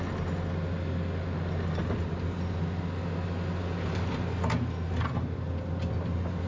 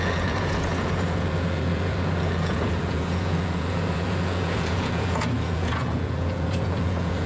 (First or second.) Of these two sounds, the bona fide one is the first